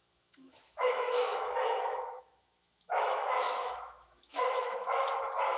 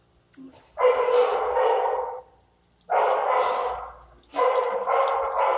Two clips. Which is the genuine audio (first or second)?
second